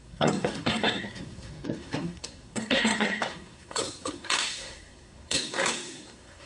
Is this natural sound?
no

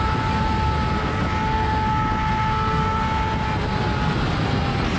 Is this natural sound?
yes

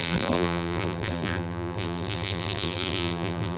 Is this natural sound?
no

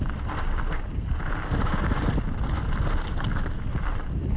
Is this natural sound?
yes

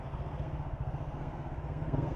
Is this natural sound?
no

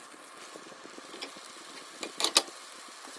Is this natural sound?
yes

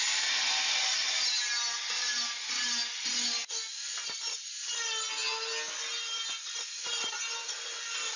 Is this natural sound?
yes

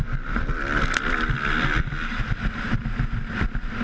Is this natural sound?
yes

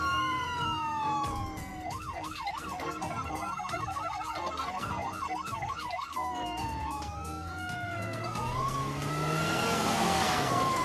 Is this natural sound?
no